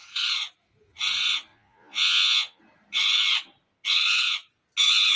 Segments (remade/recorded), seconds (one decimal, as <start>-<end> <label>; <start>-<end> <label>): 0.0-1.5 recorded; 1.5-2.6 remade; 2.6-5.2 recorded